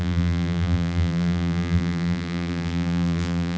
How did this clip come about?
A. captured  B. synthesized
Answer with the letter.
B